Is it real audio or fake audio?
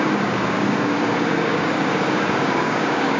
fake